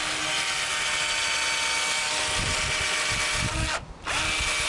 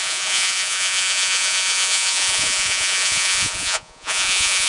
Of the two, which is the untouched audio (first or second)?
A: first